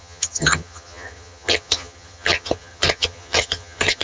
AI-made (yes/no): yes